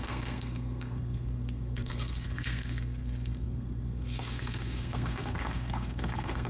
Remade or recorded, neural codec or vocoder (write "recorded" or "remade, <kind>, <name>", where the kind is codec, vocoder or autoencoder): remade, codec, SNAC